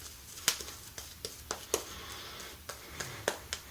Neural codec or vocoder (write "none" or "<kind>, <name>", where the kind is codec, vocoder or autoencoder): none